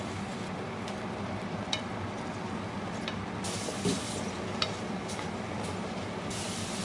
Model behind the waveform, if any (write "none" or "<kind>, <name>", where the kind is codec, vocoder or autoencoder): vocoder, BigVGAN v2